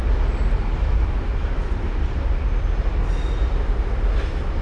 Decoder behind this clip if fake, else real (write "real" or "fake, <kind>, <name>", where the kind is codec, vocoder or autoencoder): real